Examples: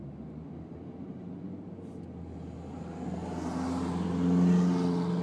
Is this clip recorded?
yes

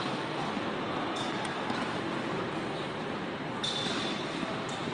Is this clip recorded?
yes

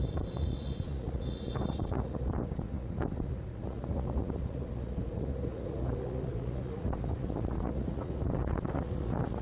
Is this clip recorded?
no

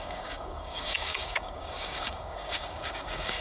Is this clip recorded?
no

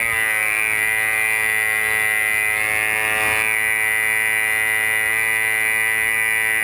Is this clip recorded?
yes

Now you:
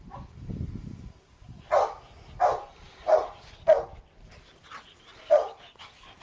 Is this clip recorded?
yes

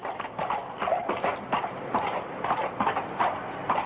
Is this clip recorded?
yes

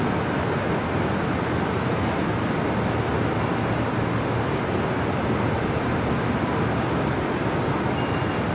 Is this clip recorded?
yes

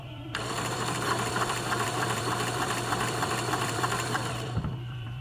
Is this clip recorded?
no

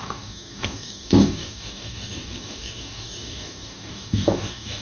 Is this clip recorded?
no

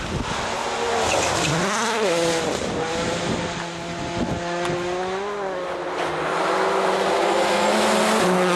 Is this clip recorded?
yes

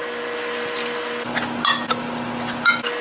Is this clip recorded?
yes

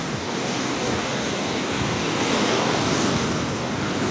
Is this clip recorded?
no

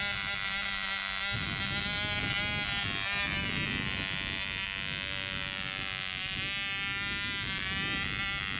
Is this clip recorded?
yes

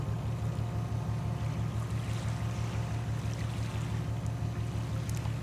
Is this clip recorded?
yes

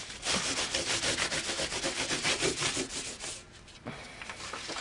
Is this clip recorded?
yes